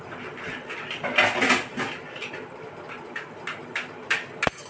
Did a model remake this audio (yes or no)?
no